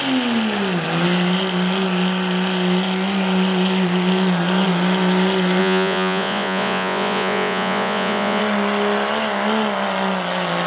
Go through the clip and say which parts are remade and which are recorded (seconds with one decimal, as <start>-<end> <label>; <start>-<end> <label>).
0.0-5.6 recorded; 5.6-8.4 remade; 8.4-10.7 recorded